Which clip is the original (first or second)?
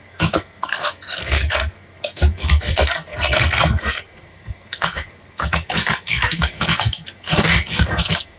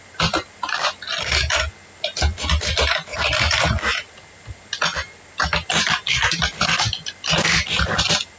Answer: second